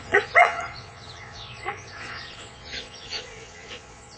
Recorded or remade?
remade